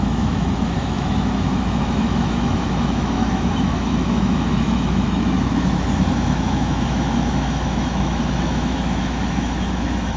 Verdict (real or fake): fake